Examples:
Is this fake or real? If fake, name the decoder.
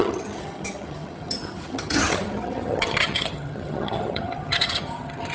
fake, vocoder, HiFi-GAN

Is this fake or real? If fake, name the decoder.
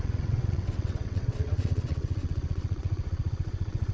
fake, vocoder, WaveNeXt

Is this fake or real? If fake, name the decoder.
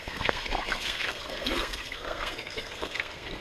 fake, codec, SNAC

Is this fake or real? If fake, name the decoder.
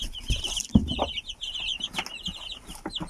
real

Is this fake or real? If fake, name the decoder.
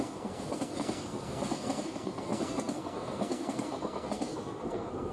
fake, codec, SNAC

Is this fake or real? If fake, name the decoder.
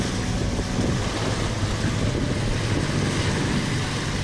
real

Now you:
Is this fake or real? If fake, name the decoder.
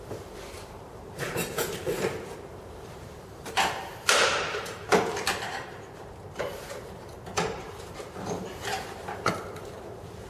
fake, vocoder, BigVGAN v2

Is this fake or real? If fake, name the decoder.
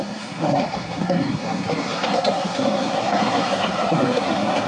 fake, codec, SNAC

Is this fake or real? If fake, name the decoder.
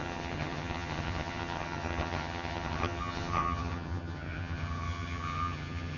fake, vocoder, HiFi-GAN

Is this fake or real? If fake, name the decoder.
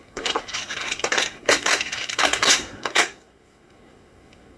fake, codec, SNAC